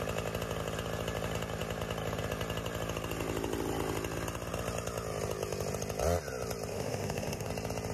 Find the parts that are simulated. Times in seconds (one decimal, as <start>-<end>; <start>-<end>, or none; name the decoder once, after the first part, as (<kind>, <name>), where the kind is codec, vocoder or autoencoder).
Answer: 6.7-7.5 (autoencoder, DAC-VAE)